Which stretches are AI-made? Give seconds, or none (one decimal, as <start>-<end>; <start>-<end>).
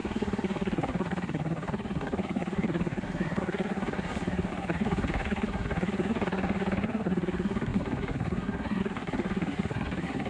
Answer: 0.0-10.3